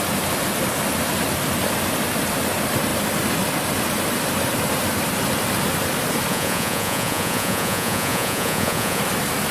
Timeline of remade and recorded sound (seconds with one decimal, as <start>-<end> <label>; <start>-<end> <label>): 0.0-6.3 recorded; 6.3-9.0 remade; 9.0-9.5 recorded